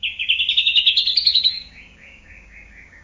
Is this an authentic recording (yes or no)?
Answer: no